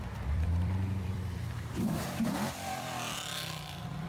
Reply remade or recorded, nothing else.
remade